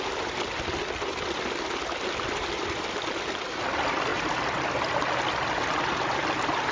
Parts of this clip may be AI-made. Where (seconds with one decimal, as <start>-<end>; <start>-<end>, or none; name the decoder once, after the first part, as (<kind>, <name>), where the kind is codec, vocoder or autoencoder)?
none